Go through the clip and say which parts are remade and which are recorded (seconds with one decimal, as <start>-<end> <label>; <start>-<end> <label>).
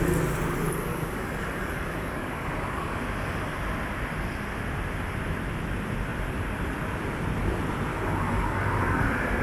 0.0-0.9 recorded; 0.9-3.0 remade; 3.0-7.9 recorded; 7.9-9.0 remade; 9.0-9.4 recorded